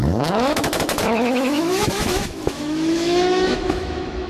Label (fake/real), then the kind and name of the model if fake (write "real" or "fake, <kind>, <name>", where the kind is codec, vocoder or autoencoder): fake, autoencoder, DAC-VAE